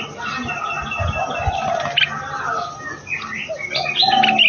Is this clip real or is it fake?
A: real